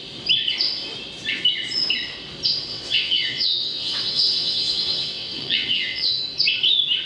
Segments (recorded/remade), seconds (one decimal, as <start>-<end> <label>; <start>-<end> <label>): 0.0-2.7 recorded; 2.7-6.2 remade; 6.2-7.1 recorded